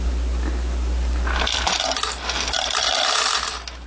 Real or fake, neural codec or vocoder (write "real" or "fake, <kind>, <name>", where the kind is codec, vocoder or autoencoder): real